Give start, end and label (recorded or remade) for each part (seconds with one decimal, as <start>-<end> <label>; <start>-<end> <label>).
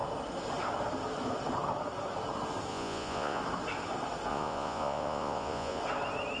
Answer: 0.0-2.7 recorded; 2.7-3.4 remade; 3.4-4.3 recorded; 4.3-5.8 remade; 5.8-6.4 recorded